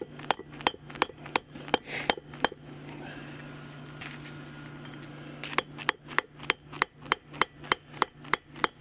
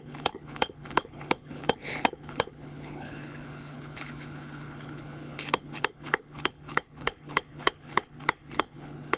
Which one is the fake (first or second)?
second